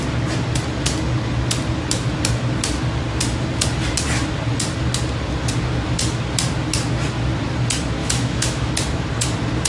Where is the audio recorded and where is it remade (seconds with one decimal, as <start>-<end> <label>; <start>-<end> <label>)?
0.0-8.0 recorded; 8.0-8.7 remade; 8.7-9.7 recorded